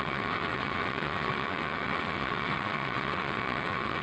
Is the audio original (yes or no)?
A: no